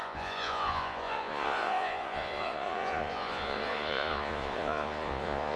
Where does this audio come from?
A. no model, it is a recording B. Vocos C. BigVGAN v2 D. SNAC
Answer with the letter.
B